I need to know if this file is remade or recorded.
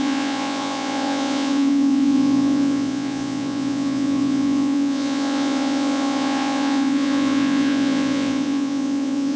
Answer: remade